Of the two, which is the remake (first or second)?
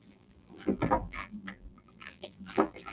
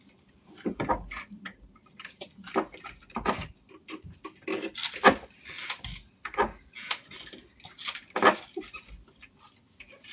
first